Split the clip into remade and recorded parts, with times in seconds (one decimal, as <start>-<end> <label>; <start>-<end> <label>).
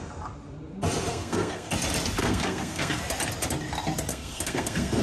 0.0-1.1 recorded; 1.1-1.7 remade; 1.7-2.2 recorded; 2.2-3.0 remade; 3.0-4.1 recorded; 4.1-5.0 remade